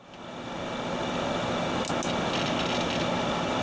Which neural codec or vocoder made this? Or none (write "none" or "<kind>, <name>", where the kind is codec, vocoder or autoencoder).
none